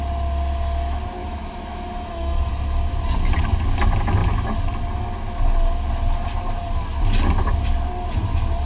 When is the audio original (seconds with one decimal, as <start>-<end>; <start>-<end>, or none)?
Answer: 0.0-1.2; 2.5-8.7